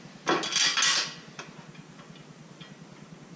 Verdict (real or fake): real